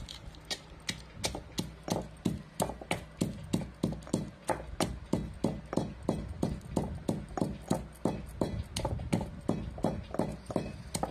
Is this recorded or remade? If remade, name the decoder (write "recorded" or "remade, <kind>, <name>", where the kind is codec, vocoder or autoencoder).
recorded